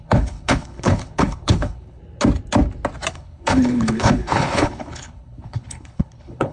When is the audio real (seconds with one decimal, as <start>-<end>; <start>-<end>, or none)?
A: 2.0-3.1